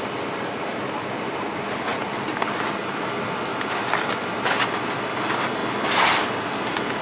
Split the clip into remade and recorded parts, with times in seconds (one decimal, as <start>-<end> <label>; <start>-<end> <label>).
0.0-7.0 recorded